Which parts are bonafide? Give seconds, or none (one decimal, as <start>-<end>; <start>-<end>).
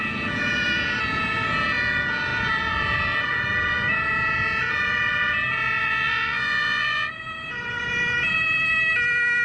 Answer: 0.0-5.8; 7.1-9.4